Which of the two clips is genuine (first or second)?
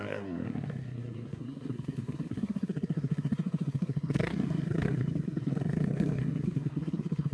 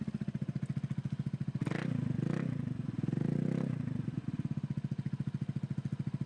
second